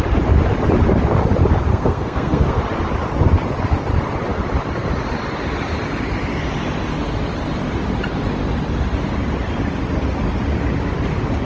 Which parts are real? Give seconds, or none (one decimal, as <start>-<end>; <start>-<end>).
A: 0.0-1.7; 2.6-11.4